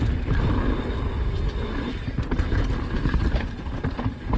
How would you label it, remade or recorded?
recorded